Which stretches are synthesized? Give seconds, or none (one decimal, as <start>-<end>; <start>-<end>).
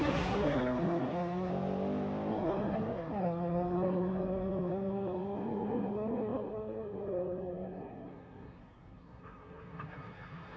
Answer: 0.0-1.5; 2.3-10.6